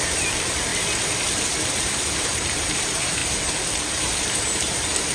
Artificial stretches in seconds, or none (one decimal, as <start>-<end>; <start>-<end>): 0.0-0.7; 1.6-5.1